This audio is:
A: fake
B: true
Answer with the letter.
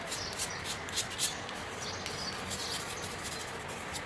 B